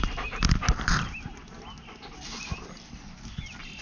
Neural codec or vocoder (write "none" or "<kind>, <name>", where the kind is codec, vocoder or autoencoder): none